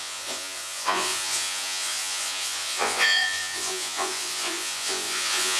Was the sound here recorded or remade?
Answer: remade